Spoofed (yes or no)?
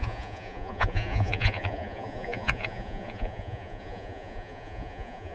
yes